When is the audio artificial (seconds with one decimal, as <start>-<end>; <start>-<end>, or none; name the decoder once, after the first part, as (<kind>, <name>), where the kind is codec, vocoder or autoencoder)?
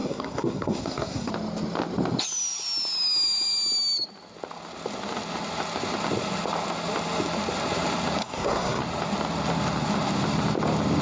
0.0-1.3 (codec, SNAC); 8.2-8.8